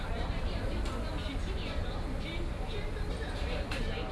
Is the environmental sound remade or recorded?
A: recorded